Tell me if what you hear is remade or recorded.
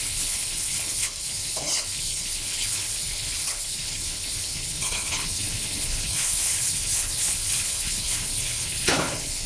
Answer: remade